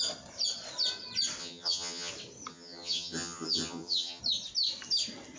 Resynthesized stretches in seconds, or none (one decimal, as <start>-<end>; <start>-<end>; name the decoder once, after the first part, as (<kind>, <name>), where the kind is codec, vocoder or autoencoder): 1.4-2.1 (vocoder, HiFi-GAN); 2.5-4.2